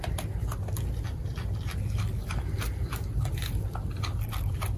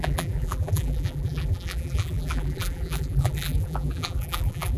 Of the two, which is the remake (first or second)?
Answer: second